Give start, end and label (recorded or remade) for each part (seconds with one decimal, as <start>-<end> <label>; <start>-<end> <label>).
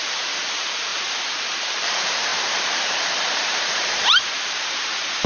0.0-5.3 remade